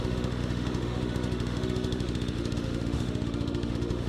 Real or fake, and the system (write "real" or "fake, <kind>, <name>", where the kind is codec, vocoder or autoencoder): fake, autoencoder, DAC-VAE